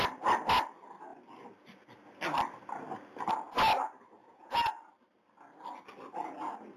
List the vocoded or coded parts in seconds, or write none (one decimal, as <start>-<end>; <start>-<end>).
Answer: 4.2-4.7